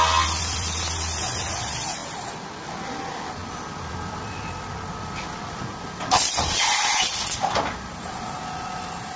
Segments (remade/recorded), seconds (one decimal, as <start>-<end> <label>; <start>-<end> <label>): 0.0-9.2 recorded

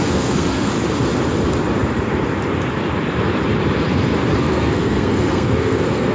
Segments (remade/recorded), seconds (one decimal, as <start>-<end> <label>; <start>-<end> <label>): 0.0-0.7 remade; 0.7-4.4 recorded; 4.4-6.1 remade